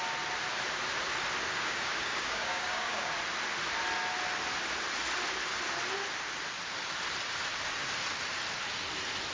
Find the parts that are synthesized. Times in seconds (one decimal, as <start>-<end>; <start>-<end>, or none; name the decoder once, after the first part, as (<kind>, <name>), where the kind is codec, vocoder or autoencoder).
1.5-3.1 (codec, DAC)